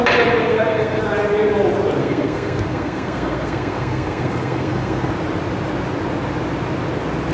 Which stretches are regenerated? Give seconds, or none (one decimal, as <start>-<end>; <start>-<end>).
0.4-1.0; 2.0-5.1

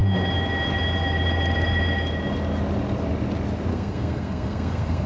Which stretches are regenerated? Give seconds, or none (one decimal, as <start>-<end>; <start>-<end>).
3.7-5.1